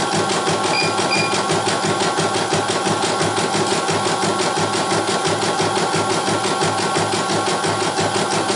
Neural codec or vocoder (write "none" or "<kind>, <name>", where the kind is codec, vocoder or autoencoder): none